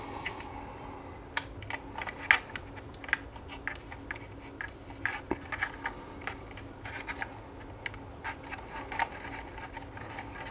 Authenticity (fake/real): real